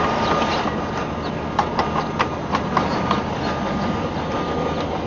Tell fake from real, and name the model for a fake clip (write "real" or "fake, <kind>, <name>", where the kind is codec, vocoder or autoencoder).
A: real